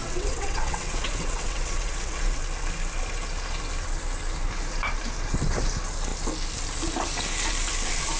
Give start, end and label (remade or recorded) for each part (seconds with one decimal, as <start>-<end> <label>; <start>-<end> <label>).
0.0-2.4 remade; 2.4-8.2 recorded

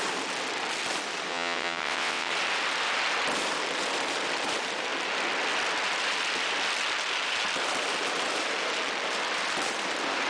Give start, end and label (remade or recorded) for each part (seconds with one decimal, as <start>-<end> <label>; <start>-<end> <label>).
0.0-1.3 recorded; 1.3-2.3 remade; 2.3-10.3 recorded

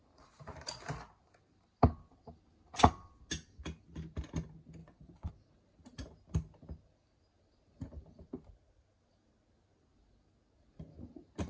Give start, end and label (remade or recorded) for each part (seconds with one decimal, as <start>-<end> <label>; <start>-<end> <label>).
0.0-4.8 recorded; 4.8-5.3 remade; 5.3-11.5 recorded

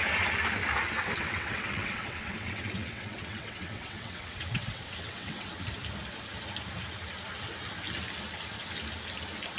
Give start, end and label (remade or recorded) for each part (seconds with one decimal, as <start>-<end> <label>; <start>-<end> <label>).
0.0-1.3 recorded; 1.3-5.5 remade; 5.5-9.6 recorded